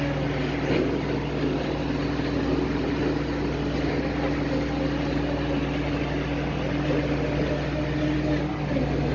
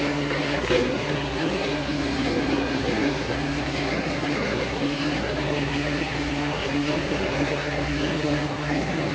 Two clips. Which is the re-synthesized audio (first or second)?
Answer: second